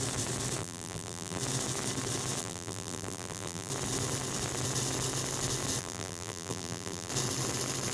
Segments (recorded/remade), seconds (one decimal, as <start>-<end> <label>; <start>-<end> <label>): 0.0-0.6 recorded; 0.6-1.4 remade; 1.4-2.4 recorded; 2.4-3.7 remade; 3.7-5.8 recorded; 5.8-7.1 remade; 7.1-7.9 recorded